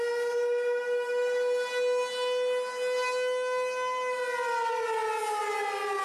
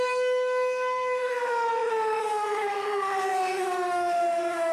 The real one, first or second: first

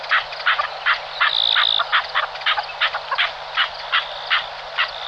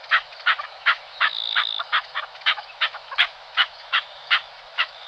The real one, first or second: first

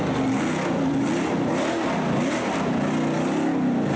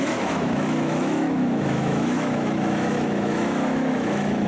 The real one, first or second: first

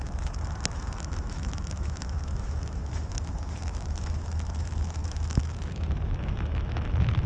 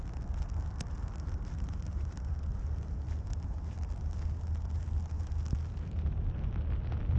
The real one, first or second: second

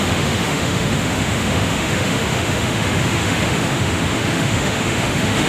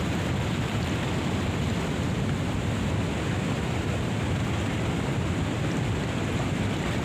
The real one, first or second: second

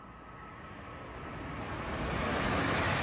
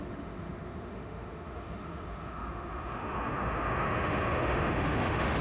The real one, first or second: first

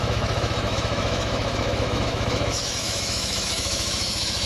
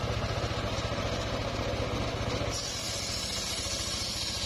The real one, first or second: second